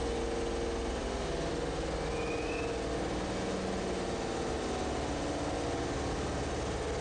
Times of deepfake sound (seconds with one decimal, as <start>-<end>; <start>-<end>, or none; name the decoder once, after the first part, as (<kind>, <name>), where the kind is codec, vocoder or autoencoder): none